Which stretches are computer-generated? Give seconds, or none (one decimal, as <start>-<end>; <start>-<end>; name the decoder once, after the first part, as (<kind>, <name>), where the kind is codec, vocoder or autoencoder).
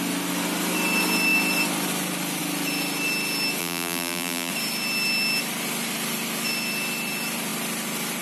3.6-4.5 (vocoder, BigVGAN v2)